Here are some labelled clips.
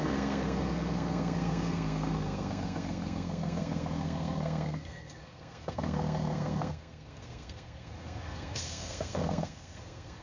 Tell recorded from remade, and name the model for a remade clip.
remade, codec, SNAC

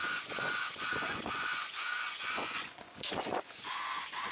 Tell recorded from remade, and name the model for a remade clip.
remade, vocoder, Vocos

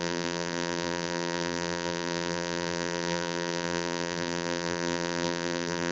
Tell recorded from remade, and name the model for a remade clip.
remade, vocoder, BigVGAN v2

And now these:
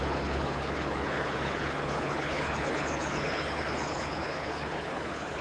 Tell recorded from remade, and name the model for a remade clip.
remade, codec, HILCodec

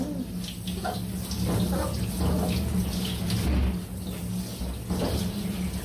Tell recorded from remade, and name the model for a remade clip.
recorded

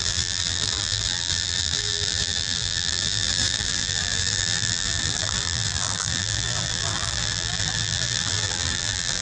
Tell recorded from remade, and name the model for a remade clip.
remade, vocoder, BigVGAN v2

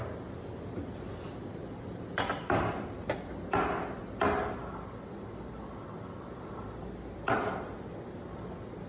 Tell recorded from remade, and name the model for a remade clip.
recorded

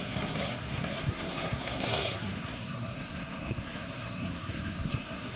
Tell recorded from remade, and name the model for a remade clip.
remade, codec, SNAC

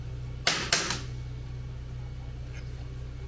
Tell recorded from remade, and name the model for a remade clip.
recorded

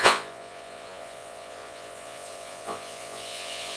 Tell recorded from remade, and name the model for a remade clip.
remade, vocoder, Vocos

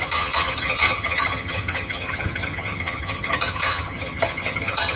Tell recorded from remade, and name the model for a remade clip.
remade, vocoder, HiFi-GAN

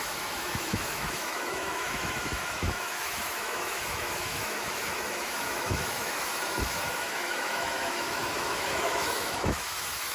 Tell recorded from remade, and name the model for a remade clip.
remade, autoencoder, DAC-VAE